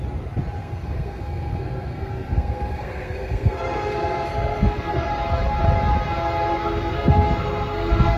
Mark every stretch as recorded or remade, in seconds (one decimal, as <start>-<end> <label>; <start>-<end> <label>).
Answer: 0.0-0.6 recorded; 0.6-5.2 remade; 5.2-6.5 recorded; 6.5-8.2 remade

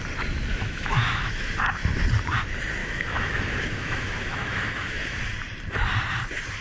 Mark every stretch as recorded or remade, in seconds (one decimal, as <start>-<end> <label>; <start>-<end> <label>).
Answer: 0.0-0.5 recorded; 0.5-1.5 remade; 1.5-2.8 recorded; 2.8-5.2 remade; 5.2-6.6 recorded

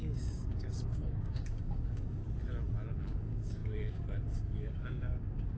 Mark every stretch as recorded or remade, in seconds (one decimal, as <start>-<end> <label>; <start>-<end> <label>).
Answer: 0.0-2.2 remade; 2.2-2.9 recorded; 2.9-5.6 remade

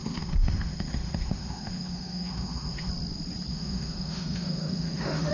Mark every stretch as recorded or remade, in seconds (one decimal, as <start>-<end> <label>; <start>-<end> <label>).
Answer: 0.0-2.9 remade; 2.9-3.5 recorded; 3.5-5.3 remade

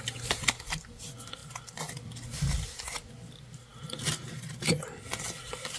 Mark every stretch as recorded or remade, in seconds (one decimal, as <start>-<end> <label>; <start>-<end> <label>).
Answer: 0.0-5.8 recorded

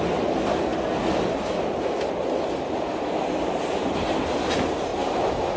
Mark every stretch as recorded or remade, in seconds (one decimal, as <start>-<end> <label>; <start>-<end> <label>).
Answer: 0.0-4.9 recorded; 4.9-5.6 remade